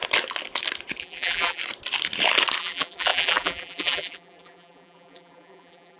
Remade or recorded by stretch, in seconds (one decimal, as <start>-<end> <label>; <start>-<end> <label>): 0.0-1.0 recorded; 1.0-1.6 remade; 1.6-2.6 recorded; 2.6-6.0 remade